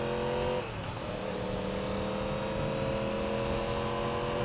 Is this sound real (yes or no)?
yes